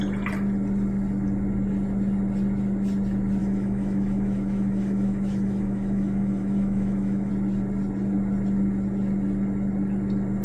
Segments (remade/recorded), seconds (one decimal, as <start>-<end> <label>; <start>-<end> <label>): 0.0-3.4 recorded; 3.4-7.3 remade; 7.3-10.4 recorded